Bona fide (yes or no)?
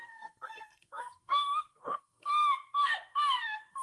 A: no